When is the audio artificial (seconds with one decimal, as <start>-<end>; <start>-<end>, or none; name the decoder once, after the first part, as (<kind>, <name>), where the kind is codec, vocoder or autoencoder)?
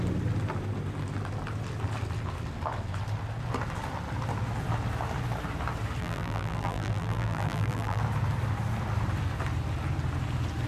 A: 6.0-8.0 (vocoder, BigVGAN v2)